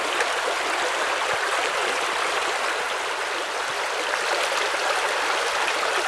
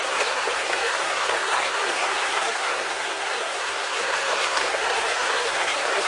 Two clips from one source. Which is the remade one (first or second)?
second